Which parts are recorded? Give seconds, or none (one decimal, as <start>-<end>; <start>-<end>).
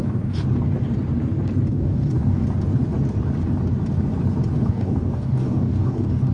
0.4-1.7; 2.4-4.7